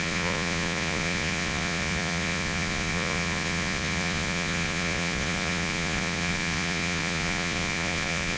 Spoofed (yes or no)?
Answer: yes